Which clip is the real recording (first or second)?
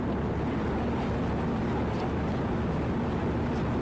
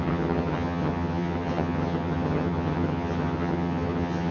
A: first